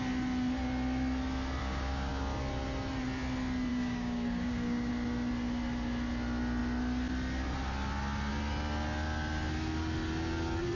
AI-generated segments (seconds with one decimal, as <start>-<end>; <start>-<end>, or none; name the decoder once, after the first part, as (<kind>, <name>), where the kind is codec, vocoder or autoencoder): 1.6-2.1 (codec, DAC); 3.7-4.9